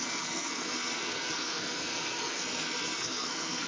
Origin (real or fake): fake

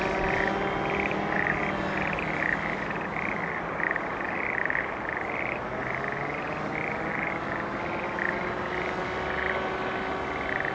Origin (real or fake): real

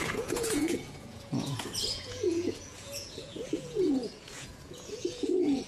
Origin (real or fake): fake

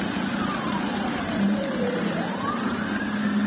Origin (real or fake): fake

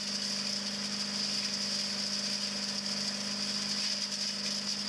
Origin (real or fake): real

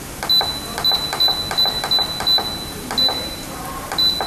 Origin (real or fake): real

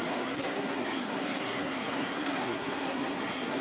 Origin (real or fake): fake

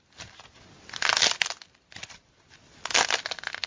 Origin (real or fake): real